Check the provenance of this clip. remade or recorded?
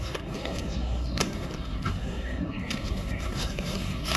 remade